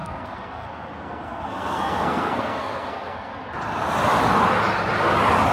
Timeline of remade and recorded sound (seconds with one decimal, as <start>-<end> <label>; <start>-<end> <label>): 0.0-3.3 remade; 3.3-5.5 recorded

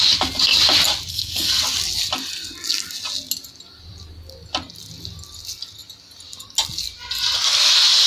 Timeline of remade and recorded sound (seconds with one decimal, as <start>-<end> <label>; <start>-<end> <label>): 0.0-1.1 recorded; 1.1-1.6 remade; 1.6-8.1 recorded

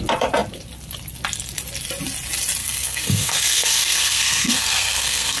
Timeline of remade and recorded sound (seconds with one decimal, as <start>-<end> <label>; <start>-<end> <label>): 0.0-2.6 recorded; 2.6-5.4 remade

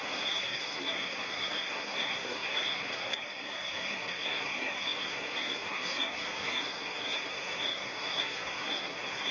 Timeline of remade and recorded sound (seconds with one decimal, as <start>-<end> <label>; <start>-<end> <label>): 0.0-9.3 remade

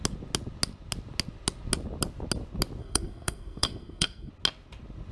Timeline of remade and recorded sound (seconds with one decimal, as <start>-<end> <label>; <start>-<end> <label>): 0.0-2.8 recorded; 2.8-4.3 remade; 4.3-5.1 recorded

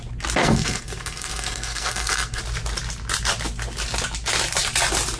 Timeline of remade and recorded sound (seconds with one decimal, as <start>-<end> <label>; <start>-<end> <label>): 0.0-0.4 recorded; 0.4-2.4 remade; 2.4-5.2 recorded